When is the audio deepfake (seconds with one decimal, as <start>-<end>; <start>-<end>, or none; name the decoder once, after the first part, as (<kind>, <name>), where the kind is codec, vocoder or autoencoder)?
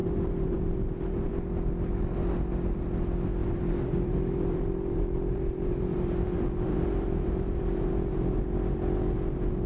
0.0-1.3 (vocoder, BigVGAN v2); 3.4-8.4